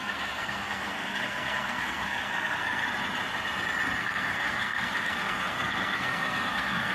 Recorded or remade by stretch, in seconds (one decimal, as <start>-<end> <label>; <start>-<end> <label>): 0.0-2.8 remade; 2.8-4.0 recorded; 4.0-6.9 remade